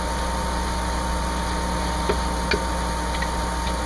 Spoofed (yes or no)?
no